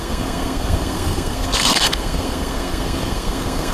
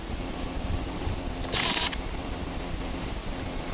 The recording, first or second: second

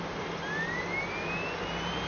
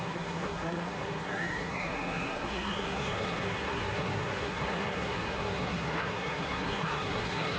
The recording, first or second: first